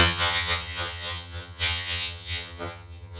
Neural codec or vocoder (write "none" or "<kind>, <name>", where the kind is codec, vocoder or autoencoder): vocoder, HiFi-GAN